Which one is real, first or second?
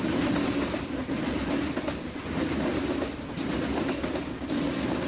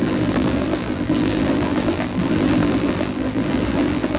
first